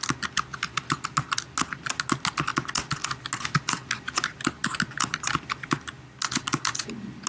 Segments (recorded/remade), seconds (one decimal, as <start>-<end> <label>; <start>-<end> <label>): 0.0-7.3 recorded